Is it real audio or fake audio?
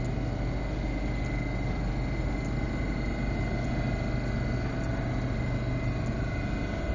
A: real